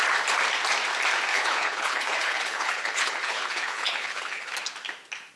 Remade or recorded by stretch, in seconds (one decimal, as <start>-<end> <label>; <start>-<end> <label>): 0.0-1.3 recorded; 1.3-4.5 remade; 4.5-5.4 recorded

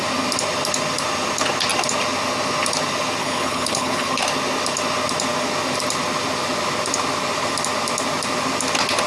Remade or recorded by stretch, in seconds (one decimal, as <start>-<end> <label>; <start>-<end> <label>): 0.0-3.2 recorded; 3.2-4.2 remade; 4.2-9.1 recorded

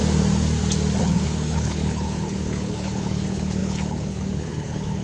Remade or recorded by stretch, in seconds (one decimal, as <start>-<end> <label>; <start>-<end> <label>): 0.0-1.0 recorded; 1.0-5.0 remade

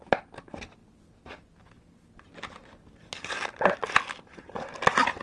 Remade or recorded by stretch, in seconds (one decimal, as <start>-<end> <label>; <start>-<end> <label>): 0.0-5.2 recorded